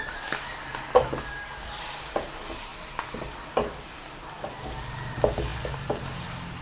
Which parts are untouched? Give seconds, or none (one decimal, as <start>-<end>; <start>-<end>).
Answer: 0.0-6.6